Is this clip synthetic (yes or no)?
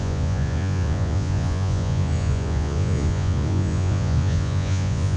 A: yes